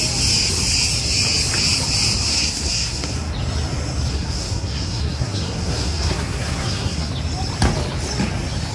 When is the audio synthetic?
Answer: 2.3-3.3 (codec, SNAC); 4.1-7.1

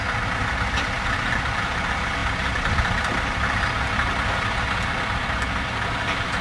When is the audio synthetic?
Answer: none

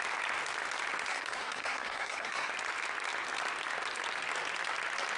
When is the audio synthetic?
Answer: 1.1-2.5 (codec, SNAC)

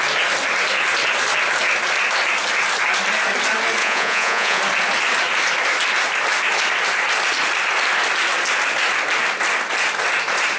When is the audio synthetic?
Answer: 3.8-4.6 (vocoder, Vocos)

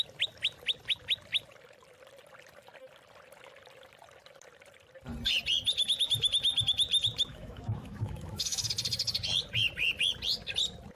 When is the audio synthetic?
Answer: 7.3-8.7 (autoencoder, DAC-VAE)

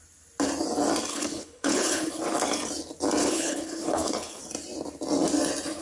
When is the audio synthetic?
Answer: 1.1-2.2 (codec, HILCodec); 3.2-4.4